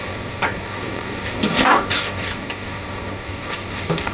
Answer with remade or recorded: remade